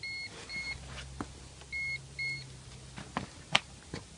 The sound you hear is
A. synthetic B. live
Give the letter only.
B